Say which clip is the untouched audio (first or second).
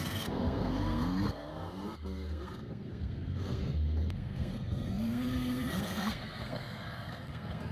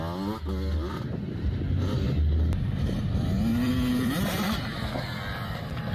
second